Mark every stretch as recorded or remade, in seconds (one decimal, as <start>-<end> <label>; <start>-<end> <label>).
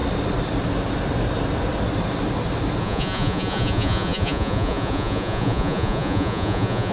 0.0-2.8 recorded; 2.8-6.9 remade